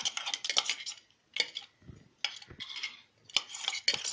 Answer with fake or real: real